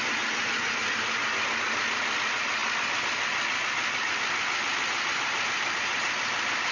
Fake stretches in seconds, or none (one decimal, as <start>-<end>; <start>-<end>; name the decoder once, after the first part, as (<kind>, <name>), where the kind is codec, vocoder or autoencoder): none